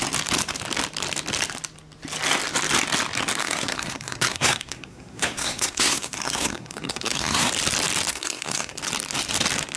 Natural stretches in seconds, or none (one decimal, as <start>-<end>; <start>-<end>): 0.0-3.4; 7.5-8.1; 8.8-9.8

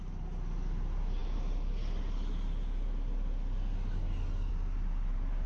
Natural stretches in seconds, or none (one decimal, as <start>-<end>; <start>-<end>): 0.0-5.5

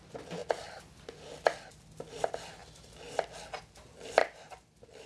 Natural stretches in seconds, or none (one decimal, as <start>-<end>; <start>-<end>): 0.0-5.1

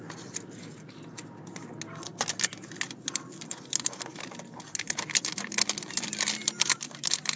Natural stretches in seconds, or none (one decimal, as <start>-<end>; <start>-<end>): 0.0-7.4

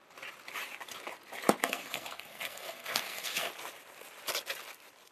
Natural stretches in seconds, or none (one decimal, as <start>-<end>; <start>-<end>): 0.0-1.6; 3.5-5.1

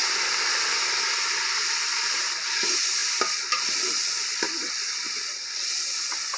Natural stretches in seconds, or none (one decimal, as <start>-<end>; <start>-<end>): 0.0-6.4